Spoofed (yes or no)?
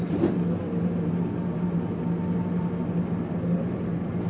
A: no